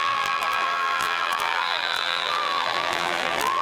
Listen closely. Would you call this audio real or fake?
fake